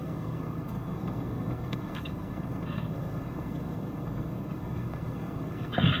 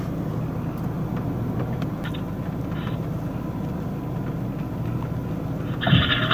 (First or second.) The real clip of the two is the second